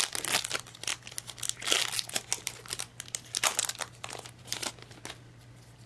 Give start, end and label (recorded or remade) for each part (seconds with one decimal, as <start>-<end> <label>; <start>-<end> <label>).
0.0-5.9 recorded